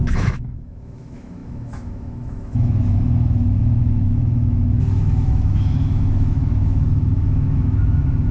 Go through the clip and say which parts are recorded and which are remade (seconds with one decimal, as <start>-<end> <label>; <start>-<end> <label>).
0.0-8.3 remade